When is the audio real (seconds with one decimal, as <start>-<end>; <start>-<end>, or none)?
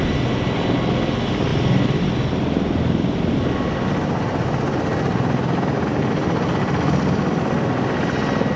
0.0-8.6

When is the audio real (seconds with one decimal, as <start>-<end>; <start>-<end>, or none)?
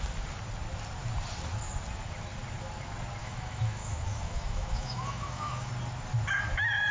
0.0-3.2; 5.7-6.9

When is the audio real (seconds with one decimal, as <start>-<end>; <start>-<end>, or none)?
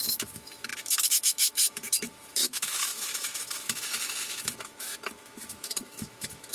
none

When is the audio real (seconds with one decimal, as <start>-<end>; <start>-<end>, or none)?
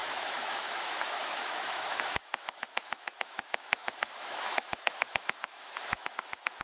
none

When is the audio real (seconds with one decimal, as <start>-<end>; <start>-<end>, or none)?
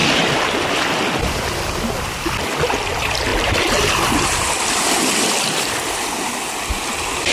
0.0-7.3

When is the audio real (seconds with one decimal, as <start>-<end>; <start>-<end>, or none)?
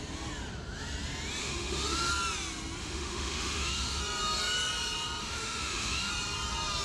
0.0-1.4; 2.1-2.8; 4.0-5.2; 6.1-6.8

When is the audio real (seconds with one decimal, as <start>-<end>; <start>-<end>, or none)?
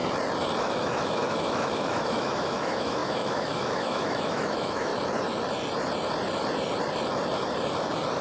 0.0-0.6; 4.9-8.2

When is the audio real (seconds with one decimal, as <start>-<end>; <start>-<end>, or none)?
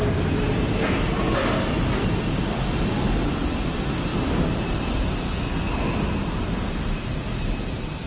0.0-8.1